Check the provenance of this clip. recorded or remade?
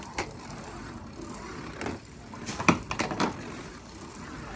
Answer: recorded